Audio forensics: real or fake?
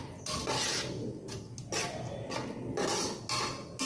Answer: real